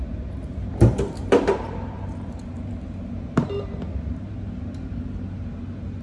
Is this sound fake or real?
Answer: fake